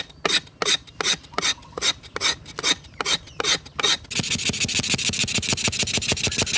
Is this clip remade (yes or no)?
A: no